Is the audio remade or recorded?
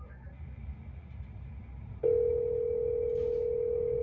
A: recorded